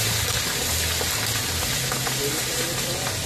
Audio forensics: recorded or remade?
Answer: recorded